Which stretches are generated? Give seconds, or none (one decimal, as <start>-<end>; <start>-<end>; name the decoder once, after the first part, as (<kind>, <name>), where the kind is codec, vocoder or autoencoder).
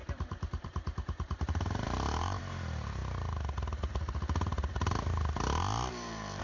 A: 0.0-3.0 (vocoder, BigVGAN v2); 5.9-6.4